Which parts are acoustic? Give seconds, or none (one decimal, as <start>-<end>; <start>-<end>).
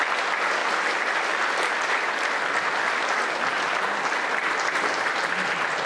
0.0-5.9